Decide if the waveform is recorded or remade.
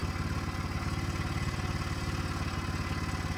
recorded